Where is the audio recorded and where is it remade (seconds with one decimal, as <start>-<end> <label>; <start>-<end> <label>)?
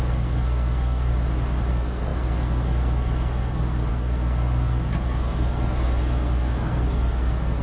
0.0-1.1 remade; 1.1-1.7 recorded; 1.7-7.6 remade